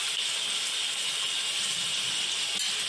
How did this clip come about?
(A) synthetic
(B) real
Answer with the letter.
B